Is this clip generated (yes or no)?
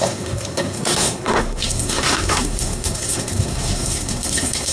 yes